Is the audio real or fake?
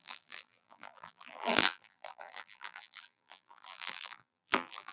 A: fake